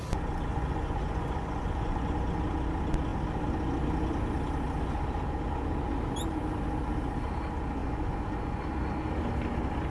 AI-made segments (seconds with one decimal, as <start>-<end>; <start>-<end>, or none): 0.5-2.1; 7.8-8.6